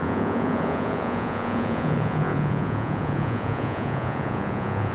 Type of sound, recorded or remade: remade